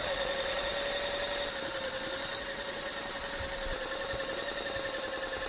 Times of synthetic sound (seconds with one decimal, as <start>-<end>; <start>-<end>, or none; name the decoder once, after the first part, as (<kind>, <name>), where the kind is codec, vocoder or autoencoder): 0.0-0.7 (vocoder, Vocos); 2.4-2.9